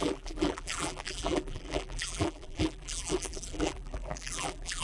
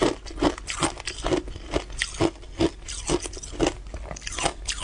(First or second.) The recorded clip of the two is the second